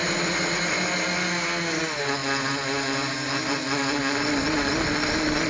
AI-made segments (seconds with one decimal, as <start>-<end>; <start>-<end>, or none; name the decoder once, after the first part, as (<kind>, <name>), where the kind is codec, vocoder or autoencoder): 0.0-0.7 (vocoder, Vocos)